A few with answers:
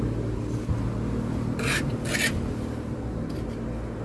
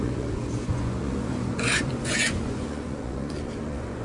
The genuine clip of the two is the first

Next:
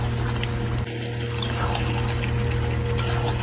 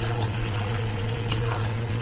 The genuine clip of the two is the first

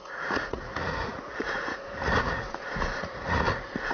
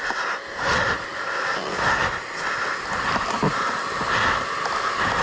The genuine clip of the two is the second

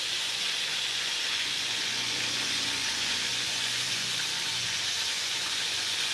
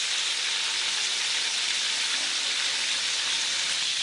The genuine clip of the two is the second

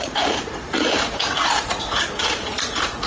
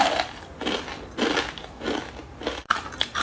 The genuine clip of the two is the second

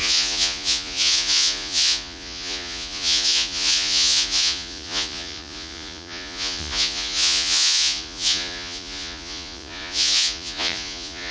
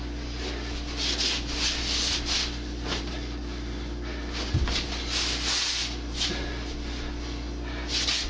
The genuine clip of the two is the second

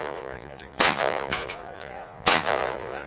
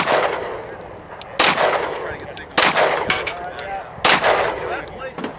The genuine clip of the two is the second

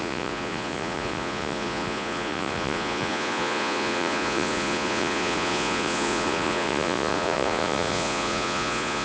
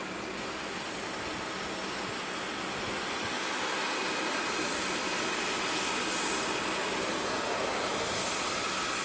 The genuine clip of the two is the second